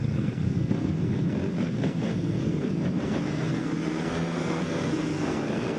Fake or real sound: fake